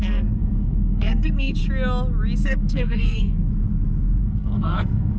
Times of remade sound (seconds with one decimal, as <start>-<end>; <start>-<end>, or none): 0.0-1.6; 2.4-3.5; 4.2-5.2